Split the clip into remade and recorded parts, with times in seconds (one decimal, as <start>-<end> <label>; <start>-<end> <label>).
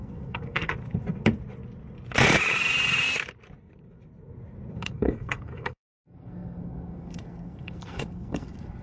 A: 0.0-0.7 remade; 0.7-4.7 recorded; 4.7-8.8 remade